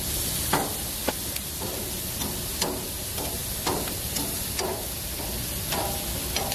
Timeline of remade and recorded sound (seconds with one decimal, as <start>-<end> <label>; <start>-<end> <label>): 0.0-6.5 recorded